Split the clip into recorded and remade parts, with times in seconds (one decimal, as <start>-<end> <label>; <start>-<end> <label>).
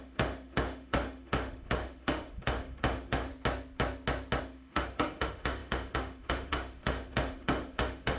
0.0-3.3 remade; 3.3-4.4 recorded; 4.4-8.2 remade